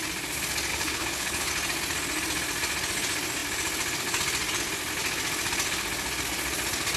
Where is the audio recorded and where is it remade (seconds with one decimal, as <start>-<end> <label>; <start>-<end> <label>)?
0.0-0.7 recorded; 0.7-1.5 remade; 1.5-7.0 recorded